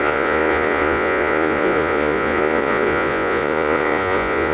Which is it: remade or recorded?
remade